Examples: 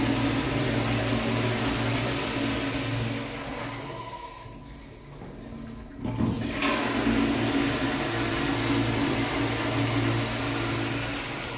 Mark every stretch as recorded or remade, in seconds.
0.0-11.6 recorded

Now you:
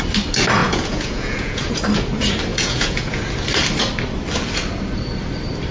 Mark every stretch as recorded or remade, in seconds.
0.0-0.6 recorded; 0.6-1.8 remade; 1.8-2.5 recorded; 2.5-3.2 remade; 3.2-5.7 recorded

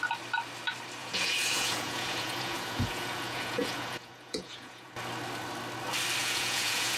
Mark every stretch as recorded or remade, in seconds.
0.0-1.0 recorded; 1.0-4.9 remade; 4.9-6.2 recorded; 6.2-7.0 remade

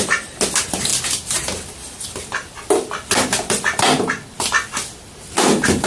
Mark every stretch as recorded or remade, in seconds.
0.0-5.9 recorded